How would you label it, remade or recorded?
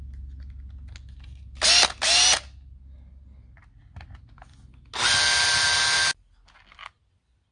recorded